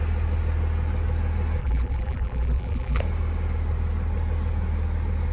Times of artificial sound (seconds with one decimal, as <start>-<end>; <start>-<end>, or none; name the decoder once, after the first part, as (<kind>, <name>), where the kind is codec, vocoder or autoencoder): 1.6-3.0 (vocoder, BigVGAN v2)